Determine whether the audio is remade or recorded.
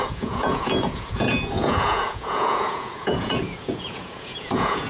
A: remade